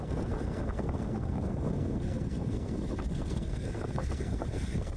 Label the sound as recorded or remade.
remade